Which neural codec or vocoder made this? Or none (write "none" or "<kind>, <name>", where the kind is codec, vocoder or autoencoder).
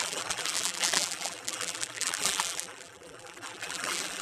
vocoder, BigVGAN v2